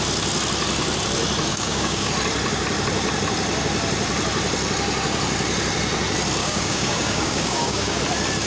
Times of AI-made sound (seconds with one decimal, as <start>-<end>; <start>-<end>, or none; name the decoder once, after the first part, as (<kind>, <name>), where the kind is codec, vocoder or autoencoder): 1.5-2.1 (codec, DAC); 6.4-8.0